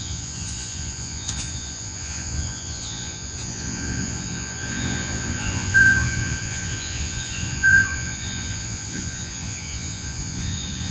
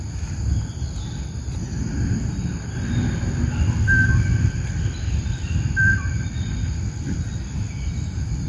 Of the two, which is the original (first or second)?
second